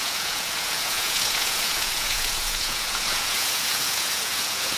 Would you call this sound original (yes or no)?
no